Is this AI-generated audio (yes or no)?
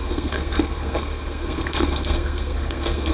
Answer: yes